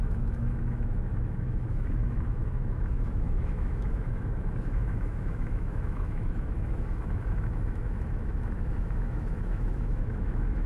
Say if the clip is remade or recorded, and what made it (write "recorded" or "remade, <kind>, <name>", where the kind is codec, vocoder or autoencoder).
remade, autoencoder, DAC-VAE